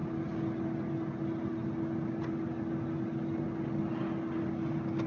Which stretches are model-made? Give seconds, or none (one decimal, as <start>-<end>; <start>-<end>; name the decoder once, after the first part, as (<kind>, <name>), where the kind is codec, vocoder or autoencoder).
none

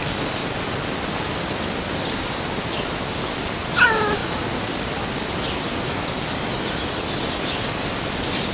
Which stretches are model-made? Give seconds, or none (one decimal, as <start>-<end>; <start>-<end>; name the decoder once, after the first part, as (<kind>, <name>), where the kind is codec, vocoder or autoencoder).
none

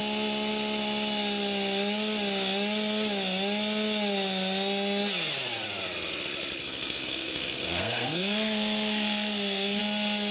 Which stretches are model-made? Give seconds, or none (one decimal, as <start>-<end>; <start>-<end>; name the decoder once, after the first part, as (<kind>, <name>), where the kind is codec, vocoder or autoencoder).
6.6-9.8 (codec, SNAC)

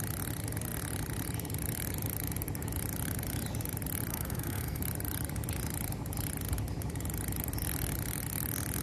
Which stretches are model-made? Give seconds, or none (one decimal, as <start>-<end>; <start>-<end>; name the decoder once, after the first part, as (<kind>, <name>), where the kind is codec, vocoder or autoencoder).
4.1-4.8 (codec, SNAC)

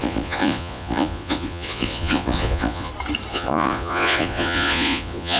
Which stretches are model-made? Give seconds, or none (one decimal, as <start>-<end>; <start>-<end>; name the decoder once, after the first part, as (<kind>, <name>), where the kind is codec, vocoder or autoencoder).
0.0-2.9 (vocoder, Vocos); 3.3-5.4